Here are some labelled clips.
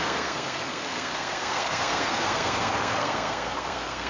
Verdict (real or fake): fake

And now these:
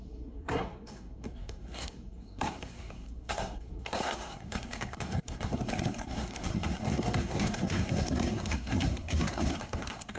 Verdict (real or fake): fake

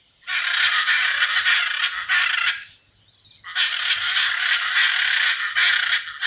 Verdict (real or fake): real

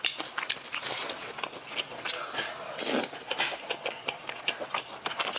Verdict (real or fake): real